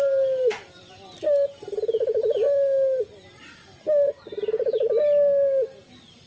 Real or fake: real